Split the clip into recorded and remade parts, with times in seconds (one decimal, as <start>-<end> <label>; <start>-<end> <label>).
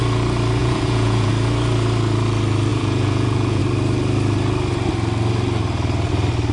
0.0-0.6 recorded; 0.6-1.3 remade; 1.3-2.7 recorded; 2.7-3.6 remade; 3.6-6.5 recorded